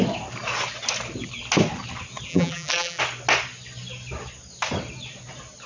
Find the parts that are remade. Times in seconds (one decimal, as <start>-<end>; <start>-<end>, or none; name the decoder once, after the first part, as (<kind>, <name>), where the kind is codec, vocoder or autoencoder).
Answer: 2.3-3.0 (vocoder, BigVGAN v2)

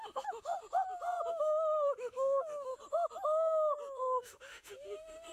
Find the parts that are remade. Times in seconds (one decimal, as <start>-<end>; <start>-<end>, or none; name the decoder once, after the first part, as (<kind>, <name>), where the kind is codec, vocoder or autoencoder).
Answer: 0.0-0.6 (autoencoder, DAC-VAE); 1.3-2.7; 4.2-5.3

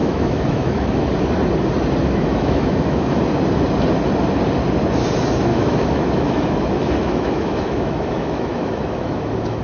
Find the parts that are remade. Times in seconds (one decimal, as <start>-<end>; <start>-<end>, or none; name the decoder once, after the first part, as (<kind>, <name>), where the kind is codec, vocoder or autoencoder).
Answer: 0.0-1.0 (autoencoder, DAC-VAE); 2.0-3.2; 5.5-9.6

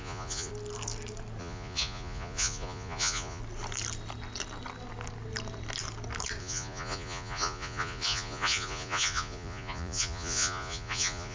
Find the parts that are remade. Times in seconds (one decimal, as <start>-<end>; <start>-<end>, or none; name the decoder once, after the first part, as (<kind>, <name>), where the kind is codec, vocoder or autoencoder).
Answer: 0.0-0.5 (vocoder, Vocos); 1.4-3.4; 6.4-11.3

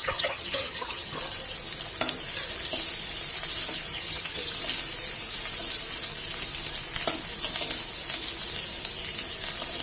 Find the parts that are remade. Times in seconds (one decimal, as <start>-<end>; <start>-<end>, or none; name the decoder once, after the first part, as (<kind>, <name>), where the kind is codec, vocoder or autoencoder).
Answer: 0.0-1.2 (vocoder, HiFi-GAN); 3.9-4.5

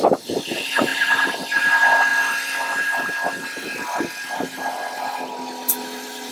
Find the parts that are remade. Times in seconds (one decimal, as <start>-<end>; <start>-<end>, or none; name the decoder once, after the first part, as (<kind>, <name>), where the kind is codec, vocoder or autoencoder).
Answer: none